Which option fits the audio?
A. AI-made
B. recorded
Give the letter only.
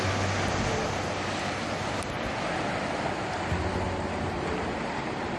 B